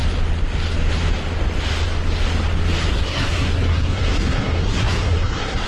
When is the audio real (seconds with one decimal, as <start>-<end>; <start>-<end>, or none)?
0.0-2.9